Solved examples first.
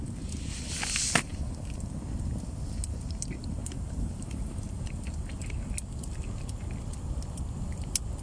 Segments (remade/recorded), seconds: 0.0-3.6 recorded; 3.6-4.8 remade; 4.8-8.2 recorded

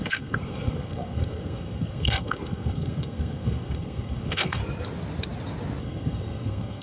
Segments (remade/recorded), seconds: 0.0-4.6 remade; 4.6-5.8 recorded; 5.8-6.8 remade

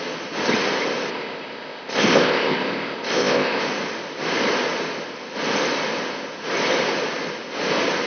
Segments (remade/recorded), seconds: 0.0-1.1 recorded; 1.1-3.6 remade; 3.6-8.1 recorded

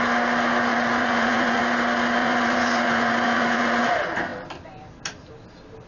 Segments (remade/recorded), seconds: 0.0-0.7 recorded; 0.7-1.6 remade; 1.6-2.2 recorded; 2.2-3.8 remade; 3.8-5.9 recorded

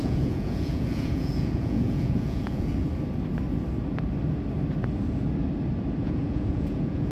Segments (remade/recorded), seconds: 0.0-2.9 remade; 2.9-6.0 recorded; 6.0-7.1 remade